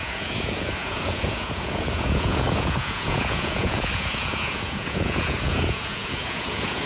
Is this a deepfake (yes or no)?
yes